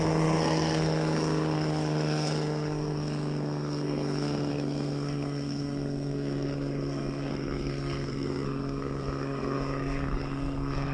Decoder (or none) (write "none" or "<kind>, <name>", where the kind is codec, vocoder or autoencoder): codec, SNAC